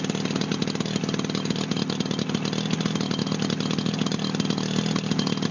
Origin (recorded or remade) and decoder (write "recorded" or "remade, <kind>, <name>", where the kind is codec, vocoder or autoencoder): recorded